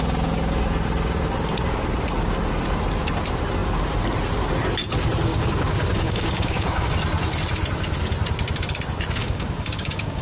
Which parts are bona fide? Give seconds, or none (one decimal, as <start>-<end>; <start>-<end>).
0.0-5.3; 6.9-9.2